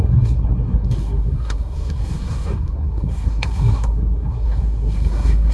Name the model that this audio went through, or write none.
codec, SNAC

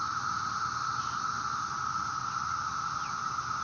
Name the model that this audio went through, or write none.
none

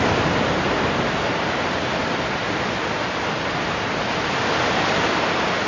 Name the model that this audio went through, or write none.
none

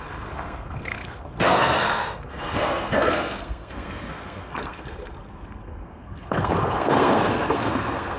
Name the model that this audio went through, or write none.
codec, SNAC